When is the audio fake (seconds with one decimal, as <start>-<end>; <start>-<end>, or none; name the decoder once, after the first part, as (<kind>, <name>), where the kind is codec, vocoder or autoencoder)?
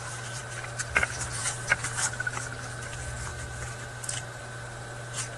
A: 3.3-4.4 (autoencoder, DAC-VAE)